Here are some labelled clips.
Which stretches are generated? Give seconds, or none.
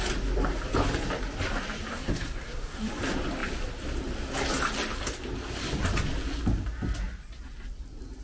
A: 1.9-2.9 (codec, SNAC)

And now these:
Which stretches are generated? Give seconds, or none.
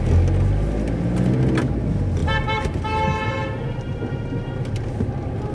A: none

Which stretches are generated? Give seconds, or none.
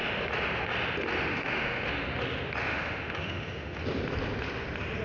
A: 1.3-1.9 (autoencoder, DAC-VAE); 2.7-3.8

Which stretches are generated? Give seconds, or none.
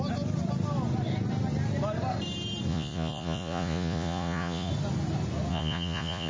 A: 2.7-4.7 (vocoder, Vocos); 5.5-6.3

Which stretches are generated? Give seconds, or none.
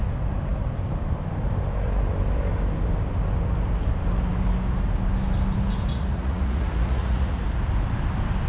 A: 5.9-7.4 (vocoder, Vocos)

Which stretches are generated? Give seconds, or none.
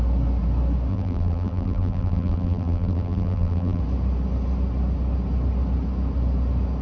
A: 0.9-3.8 (vocoder, BigVGAN v2)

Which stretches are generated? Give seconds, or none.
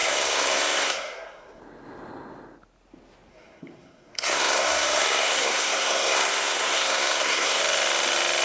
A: 0.0-1.6 (codec, SNAC); 3.3-7.6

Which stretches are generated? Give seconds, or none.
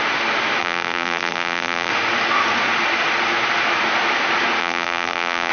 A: 0.6-1.9 (vocoder, BigVGAN v2); 4.6-5.5